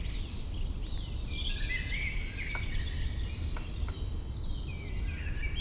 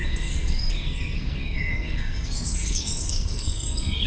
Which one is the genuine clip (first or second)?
first